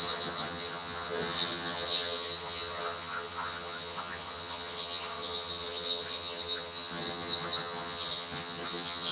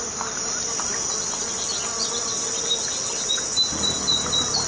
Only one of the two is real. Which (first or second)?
second